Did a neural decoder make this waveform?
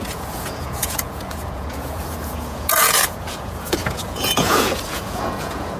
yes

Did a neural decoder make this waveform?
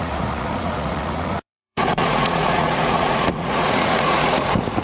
yes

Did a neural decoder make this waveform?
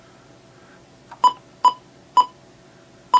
no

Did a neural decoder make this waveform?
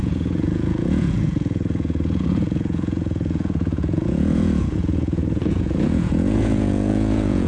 yes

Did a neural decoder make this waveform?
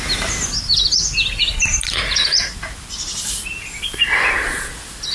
no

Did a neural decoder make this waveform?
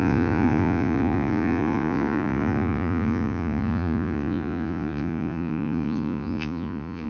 yes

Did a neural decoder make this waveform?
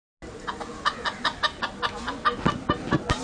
no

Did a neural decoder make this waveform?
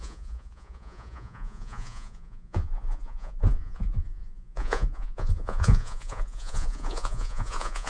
yes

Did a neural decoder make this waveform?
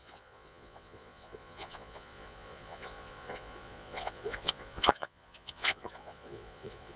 yes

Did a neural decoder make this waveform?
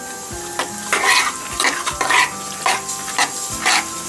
no